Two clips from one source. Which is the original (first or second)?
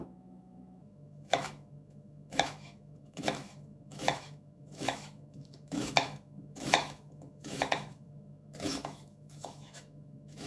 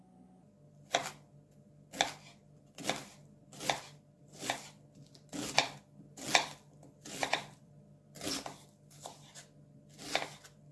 second